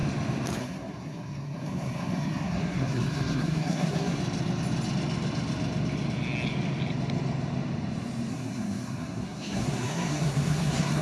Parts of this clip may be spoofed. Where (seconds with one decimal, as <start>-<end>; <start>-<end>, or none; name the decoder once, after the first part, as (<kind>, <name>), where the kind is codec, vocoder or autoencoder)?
0.6-4.2 (codec, SNAC); 8.3-11.0